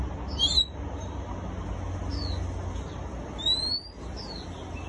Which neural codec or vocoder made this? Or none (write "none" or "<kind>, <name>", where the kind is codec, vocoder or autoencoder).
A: none